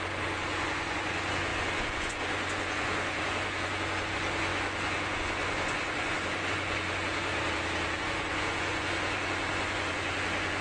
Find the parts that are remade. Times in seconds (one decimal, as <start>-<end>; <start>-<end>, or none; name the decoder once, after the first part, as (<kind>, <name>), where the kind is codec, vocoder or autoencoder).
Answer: 0.0-7.3 (vocoder, Vocos); 8.0-10.6